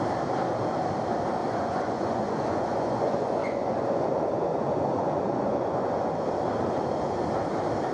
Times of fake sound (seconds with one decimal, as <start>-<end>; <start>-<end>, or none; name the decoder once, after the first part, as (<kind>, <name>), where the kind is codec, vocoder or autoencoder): 1.4-6.1 (vocoder, Vocos)